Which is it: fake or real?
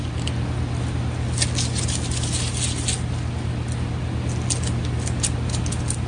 real